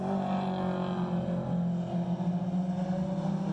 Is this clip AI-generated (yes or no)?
no